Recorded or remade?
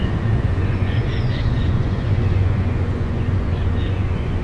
remade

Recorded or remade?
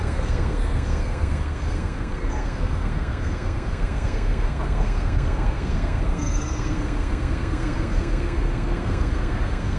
remade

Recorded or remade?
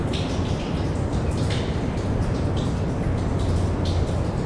recorded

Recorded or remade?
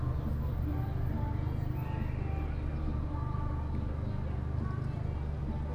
recorded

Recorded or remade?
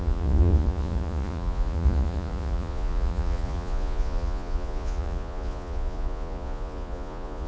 remade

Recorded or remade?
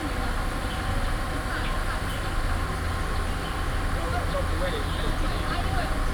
recorded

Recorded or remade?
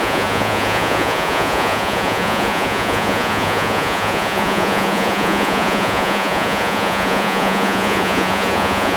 remade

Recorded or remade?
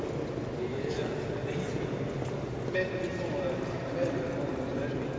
recorded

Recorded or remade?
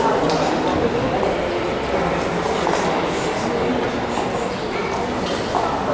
recorded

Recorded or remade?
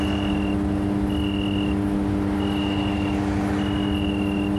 recorded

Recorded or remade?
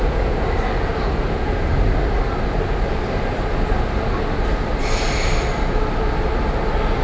recorded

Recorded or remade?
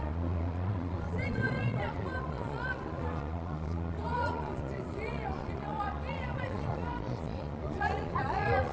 remade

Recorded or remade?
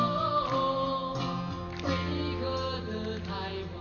recorded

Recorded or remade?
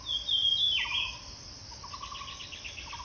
recorded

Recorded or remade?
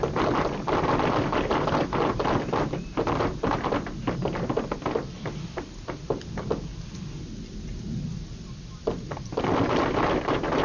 recorded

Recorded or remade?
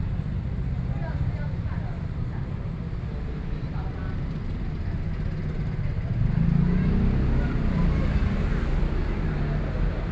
recorded